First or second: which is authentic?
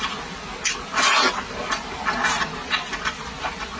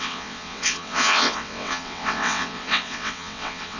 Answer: first